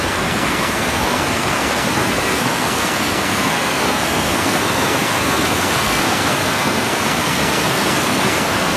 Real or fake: fake